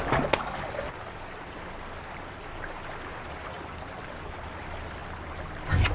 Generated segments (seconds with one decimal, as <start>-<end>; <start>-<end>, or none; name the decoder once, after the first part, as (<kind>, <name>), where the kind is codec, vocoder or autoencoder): none